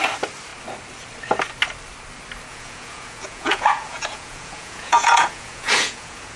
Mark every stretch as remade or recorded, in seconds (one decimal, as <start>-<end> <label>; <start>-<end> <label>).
0.0-2.5 recorded; 2.5-6.4 remade